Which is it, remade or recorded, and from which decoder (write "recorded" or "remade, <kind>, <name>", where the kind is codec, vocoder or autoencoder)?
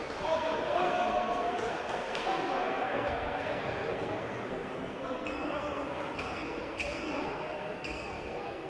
remade, codec, SNAC